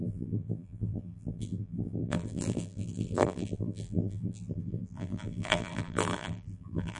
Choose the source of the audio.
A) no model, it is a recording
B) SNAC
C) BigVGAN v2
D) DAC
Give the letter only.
C